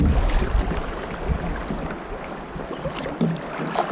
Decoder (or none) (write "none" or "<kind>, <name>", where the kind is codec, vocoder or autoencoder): none